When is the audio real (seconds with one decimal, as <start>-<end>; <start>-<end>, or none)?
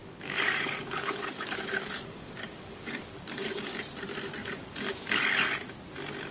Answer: 3.8-4.4; 5.2-6.3